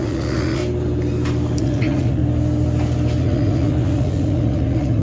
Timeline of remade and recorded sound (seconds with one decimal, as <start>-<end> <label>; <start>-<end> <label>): 0.0-0.6 remade; 0.6-1.6 recorded; 1.6-2.2 remade; 2.2-3.2 recorded; 3.2-5.0 remade